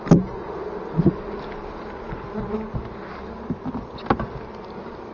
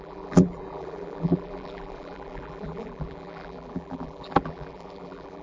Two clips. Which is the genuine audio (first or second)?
first